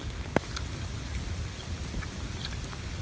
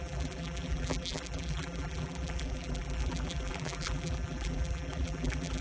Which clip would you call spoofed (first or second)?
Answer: second